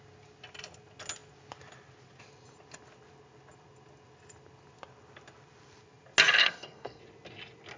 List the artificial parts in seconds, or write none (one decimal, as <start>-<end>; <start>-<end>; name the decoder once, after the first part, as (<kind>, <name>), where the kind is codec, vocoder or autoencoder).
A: 6.4-7.0 (codec, SNAC)